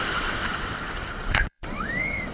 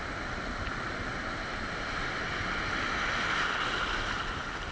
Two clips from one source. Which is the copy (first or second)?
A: first